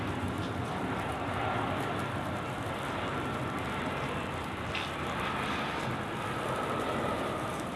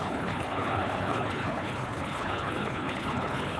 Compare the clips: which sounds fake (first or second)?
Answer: second